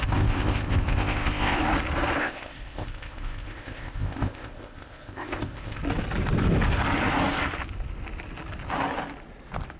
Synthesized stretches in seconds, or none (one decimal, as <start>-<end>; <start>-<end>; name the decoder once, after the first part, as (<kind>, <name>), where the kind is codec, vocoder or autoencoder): 0.0-1.6 (codec, ZipCodec); 2.2-5.8